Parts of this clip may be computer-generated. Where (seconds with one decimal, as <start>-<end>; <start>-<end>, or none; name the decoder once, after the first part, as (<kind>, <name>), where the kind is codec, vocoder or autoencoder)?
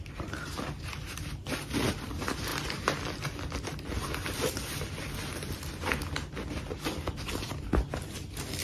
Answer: none